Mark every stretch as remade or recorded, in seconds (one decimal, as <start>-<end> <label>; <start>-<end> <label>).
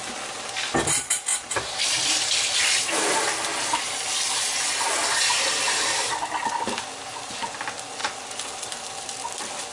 0.0-9.7 recorded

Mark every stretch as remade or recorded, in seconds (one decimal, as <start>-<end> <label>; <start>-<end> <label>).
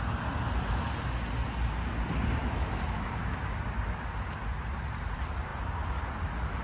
0.0-2.4 recorded; 2.4-3.1 remade; 3.1-6.6 recorded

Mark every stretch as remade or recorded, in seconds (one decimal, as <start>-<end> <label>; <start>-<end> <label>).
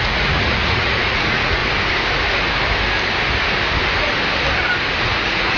0.0-1.6 remade; 1.6-5.0 recorded; 5.0-5.6 remade